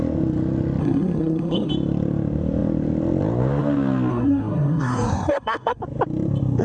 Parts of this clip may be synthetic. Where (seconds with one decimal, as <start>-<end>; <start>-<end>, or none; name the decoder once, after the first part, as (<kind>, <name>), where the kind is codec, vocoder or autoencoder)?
0.8-1.7 (codec, SNAC); 4.1-5.8